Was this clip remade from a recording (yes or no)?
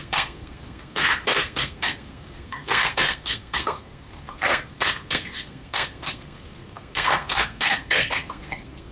yes